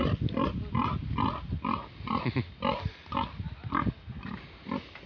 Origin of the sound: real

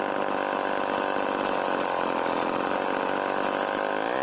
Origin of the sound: real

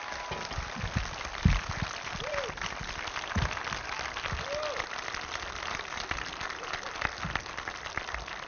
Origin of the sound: real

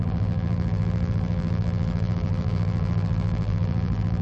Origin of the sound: fake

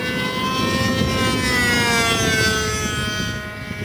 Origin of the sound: real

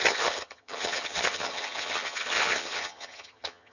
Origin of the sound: fake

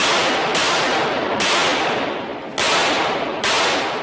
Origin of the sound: real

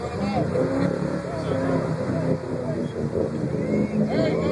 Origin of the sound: real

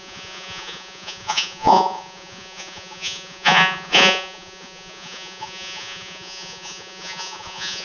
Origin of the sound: fake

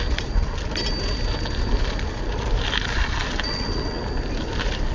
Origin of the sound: real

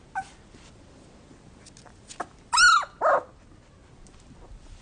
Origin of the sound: real